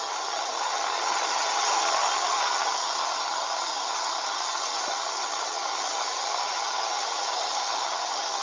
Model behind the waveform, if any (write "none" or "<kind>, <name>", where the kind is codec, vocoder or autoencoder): vocoder, HiFi-GAN